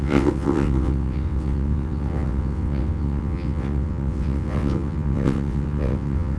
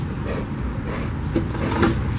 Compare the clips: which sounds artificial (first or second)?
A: first